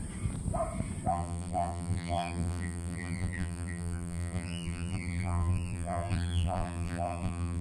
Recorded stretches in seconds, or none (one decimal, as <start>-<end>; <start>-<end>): 0.0-1.1